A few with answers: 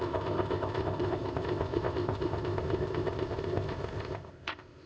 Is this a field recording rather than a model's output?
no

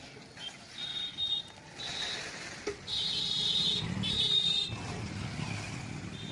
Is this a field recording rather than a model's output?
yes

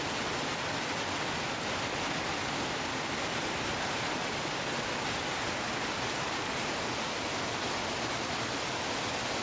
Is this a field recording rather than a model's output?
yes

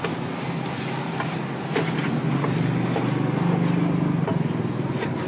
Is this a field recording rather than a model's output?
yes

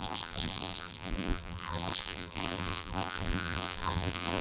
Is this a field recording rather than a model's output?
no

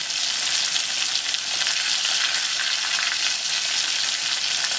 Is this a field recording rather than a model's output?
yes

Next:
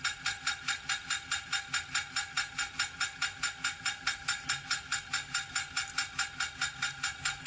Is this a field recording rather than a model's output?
yes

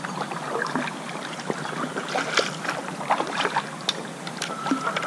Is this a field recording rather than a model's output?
yes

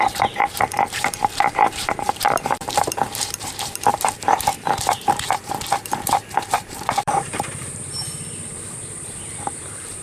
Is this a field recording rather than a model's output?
no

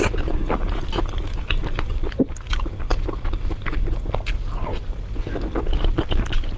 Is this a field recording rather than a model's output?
yes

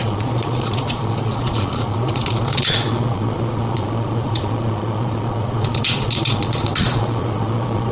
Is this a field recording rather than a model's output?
no